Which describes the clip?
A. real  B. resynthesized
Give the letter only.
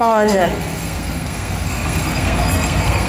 B